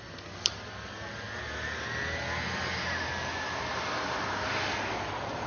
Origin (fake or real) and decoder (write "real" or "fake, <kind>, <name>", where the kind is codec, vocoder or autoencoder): real